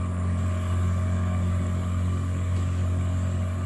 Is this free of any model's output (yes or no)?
no